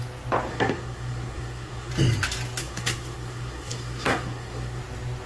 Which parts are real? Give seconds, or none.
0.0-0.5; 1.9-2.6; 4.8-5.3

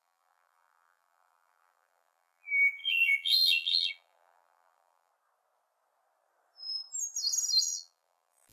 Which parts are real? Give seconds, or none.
5.1-7.6

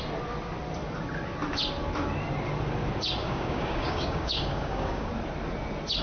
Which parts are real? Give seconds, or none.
0.0-3.2; 5.1-6.0